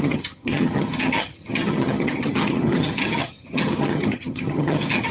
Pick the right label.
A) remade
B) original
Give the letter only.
A